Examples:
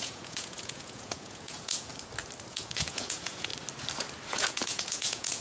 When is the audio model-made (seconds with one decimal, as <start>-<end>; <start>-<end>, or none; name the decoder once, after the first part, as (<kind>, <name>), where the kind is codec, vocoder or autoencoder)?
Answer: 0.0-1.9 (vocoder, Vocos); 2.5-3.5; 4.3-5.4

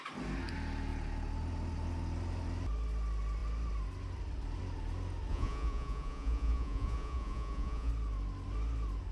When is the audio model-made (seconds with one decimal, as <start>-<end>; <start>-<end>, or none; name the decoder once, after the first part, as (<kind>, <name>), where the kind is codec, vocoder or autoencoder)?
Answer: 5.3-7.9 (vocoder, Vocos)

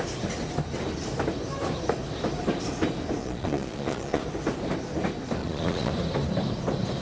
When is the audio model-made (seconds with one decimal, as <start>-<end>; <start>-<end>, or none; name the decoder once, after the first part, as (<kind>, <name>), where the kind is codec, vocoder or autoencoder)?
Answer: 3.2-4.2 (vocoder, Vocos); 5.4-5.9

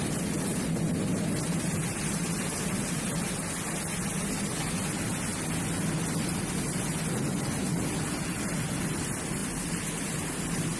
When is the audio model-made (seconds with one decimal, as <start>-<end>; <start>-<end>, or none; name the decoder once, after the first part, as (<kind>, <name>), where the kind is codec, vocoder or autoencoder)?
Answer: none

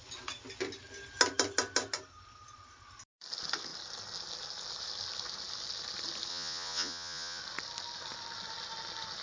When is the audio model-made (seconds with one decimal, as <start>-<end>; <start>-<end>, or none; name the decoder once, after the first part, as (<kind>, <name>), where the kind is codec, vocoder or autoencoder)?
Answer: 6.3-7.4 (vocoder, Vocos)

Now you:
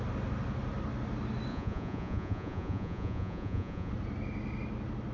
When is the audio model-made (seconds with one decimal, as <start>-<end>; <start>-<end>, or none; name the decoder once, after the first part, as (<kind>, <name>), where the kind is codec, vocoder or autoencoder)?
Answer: 1.5-3.9 (vocoder, Vocos)

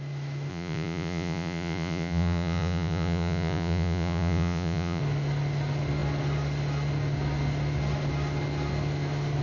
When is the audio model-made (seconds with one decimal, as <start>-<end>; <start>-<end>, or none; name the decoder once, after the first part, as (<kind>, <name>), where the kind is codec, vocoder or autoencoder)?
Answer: 0.5-5.0 (vocoder, Vocos)